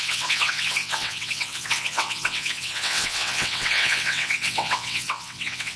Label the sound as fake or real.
fake